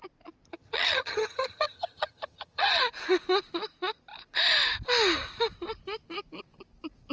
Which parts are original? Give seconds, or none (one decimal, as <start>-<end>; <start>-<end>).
0.0-0.5; 2.8-7.1